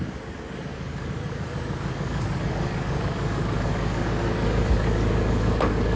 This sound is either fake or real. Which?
fake